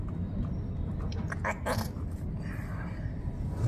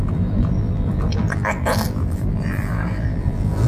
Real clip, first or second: first